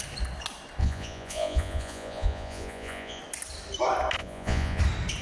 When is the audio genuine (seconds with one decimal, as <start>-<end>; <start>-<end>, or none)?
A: 0.0-0.8; 3.2-4.2; 4.8-5.2